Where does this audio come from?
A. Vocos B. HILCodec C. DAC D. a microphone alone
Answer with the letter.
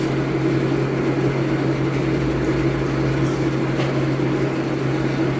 D